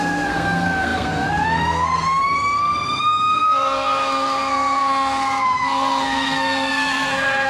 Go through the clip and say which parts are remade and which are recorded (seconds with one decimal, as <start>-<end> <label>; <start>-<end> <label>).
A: 0.0-7.5 remade